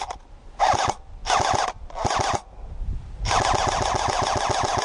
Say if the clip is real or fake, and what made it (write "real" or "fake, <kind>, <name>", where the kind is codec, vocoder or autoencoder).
real